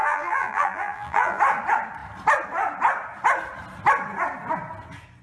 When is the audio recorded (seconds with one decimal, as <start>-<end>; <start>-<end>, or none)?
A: 1.4-5.2